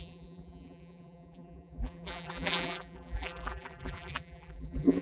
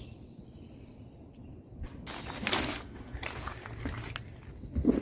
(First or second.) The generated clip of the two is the first